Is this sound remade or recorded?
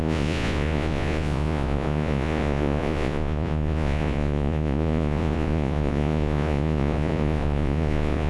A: remade